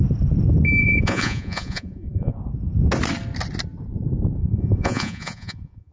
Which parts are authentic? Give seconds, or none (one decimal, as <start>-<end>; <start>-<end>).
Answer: 0.0-0.8; 2.3-4.4